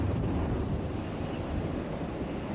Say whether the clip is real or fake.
real